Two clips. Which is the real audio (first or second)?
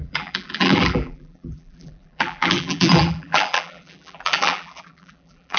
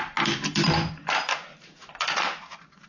second